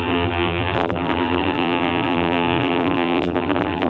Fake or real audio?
fake